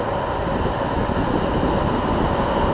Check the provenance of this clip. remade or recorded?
recorded